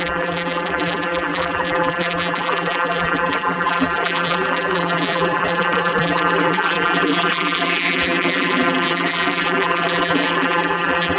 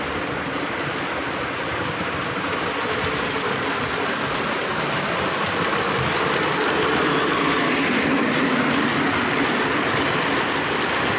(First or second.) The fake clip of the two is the first